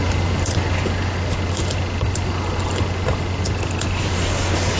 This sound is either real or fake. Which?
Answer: real